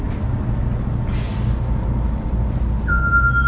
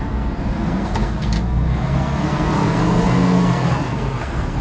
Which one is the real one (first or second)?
first